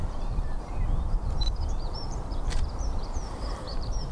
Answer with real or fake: fake